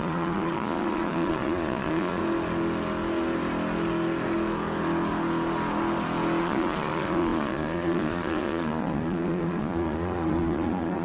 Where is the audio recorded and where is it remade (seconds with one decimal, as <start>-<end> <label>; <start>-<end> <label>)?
0.0-2.2 remade; 2.2-6.4 recorded; 6.4-11.0 remade